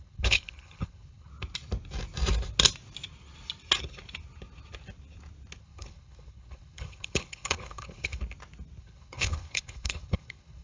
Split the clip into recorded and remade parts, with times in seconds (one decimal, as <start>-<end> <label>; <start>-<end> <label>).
0.0-1.3 remade; 1.3-5.6 recorded; 5.6-8.2 remade; 8.2-8.8 recorded; 8.8-10.6 remade